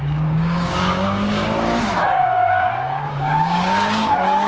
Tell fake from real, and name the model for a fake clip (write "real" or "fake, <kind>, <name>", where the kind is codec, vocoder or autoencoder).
fake, codec, DAC